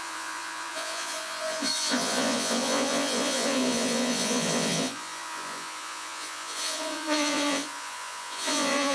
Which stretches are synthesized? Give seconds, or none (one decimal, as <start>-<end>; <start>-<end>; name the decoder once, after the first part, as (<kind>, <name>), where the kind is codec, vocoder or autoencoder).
0.0-8.9 (vocoder, Vocos)